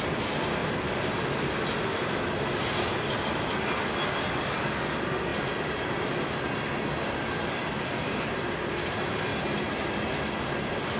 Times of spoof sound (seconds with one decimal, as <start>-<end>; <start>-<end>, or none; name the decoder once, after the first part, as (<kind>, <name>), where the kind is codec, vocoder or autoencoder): none